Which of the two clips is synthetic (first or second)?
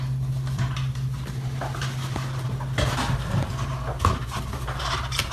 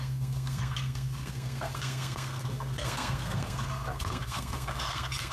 second